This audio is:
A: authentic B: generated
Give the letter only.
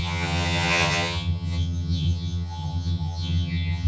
B